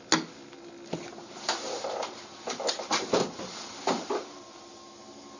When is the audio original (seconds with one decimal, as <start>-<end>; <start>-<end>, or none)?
0.0-1.2; 4.4-5.4